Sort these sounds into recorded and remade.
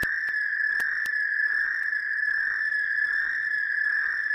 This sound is recorded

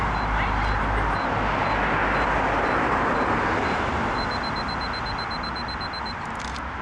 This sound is recorded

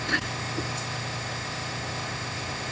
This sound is remade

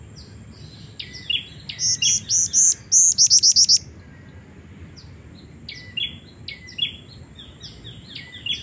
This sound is recorded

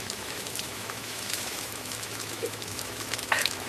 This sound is remade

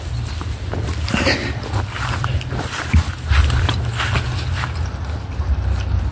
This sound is recorded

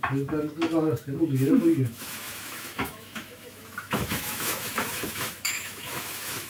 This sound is remade